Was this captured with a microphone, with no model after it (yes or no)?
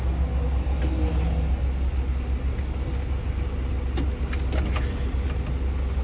yes